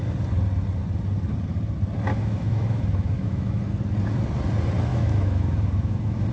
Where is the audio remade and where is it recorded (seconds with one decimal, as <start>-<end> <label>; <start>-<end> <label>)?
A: 0.0-2.1 recorded; 2.1-3.6 remade; 3.6-4.9 recorded; 4.9-6.3 remade